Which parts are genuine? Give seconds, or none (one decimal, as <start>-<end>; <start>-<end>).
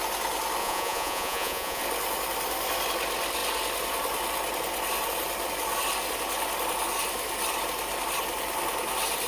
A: 0.0-0.6; 1.8-9.3